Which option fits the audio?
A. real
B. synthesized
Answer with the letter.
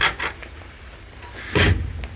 A